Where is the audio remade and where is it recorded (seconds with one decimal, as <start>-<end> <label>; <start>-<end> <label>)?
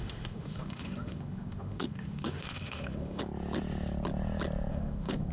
0.0-3.2 remade; 3.2-4.7 recorded; 4.7-5.3 remade